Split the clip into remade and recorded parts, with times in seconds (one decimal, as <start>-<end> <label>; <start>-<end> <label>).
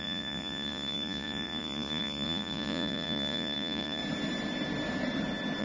0.0-4.0 remade; 4.0-5.6 recorded